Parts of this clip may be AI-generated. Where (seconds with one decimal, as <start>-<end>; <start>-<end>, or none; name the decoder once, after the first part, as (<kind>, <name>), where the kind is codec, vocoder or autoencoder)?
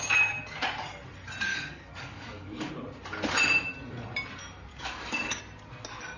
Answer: 1.5-2.7 (codec, DAC); 4.7-5.4